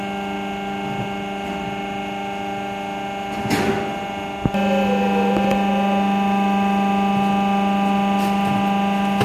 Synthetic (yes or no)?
no